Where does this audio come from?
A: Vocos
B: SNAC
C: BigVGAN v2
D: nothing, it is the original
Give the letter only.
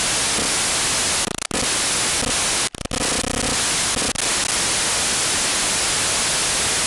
D